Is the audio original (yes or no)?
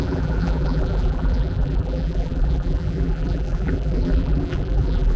no